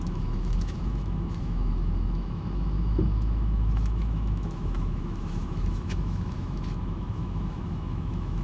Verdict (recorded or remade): remade